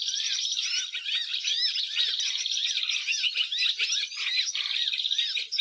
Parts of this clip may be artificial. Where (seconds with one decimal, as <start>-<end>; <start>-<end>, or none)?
none